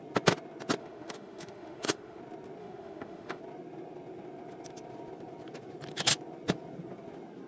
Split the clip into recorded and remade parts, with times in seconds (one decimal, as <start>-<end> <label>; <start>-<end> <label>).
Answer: 0.0-0.8 recorded; 0.8-2.2 remade; 2.2-2.6 recorded; 2.6-3.4 remade; 3.4-7.5 recorded